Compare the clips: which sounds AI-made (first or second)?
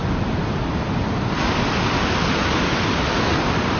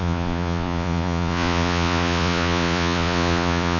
second